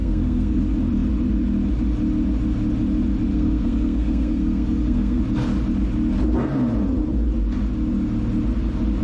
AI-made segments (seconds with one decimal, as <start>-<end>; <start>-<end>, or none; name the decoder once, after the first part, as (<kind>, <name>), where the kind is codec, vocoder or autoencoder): 0.0-0.6 (codec, SNAC); 3.3-5.2

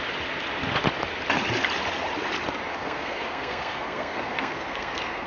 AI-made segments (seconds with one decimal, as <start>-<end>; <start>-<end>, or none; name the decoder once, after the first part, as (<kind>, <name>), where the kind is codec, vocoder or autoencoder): 2.7-5.3 (codec, SNAC)